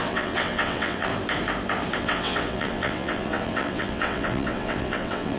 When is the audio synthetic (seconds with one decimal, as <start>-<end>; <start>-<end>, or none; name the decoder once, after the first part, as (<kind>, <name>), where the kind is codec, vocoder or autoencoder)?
0.0-1.1 (vocoder, WaveNeXt); 2.0-5.4